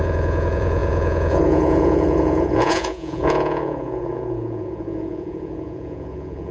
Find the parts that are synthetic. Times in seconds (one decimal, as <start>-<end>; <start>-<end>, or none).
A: 0.0-6.5